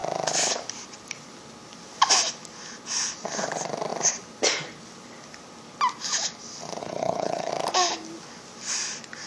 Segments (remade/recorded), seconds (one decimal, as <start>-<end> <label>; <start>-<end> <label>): 0.0-6.8 recorded; 6.8-7.5 remade; 7.5-9.3 recorded